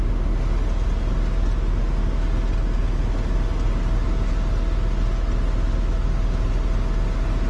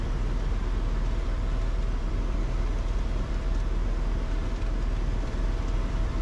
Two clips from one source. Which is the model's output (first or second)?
second